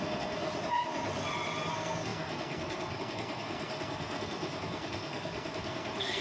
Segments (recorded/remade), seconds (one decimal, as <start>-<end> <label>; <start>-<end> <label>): 0.0-0.5 remade; 0.5-1.7 recorded; 1.7-6.2 remade